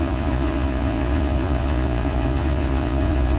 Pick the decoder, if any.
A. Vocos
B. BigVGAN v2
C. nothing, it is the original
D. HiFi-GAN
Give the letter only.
A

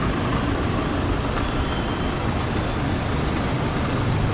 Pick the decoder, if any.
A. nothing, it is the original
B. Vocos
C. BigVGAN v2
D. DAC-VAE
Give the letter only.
A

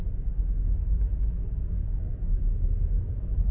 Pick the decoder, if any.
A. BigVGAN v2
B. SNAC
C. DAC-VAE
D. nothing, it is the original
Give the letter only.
C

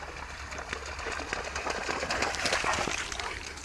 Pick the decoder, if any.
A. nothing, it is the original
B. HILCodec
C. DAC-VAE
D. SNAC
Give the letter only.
A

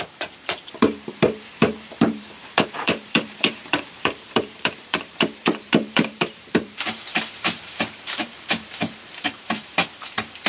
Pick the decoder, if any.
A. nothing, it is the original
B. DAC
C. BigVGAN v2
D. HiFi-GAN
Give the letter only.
C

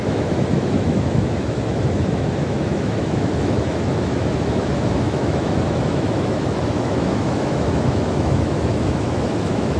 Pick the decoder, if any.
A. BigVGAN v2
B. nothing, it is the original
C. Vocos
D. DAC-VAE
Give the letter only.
D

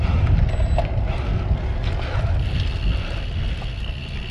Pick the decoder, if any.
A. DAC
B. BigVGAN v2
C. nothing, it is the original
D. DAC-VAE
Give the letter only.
C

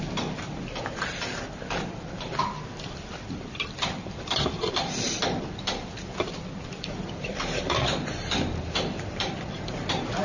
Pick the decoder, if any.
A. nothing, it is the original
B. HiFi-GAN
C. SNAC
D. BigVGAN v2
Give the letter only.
D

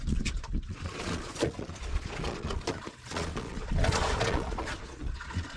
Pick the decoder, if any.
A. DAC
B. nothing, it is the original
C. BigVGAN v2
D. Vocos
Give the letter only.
D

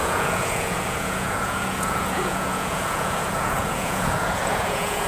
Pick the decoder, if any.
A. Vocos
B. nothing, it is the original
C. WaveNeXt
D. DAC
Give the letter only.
A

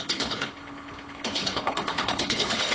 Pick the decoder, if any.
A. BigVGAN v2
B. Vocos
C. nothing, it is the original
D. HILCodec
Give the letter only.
D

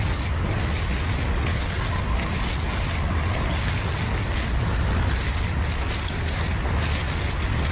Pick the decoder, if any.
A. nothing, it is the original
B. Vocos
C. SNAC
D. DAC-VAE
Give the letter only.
A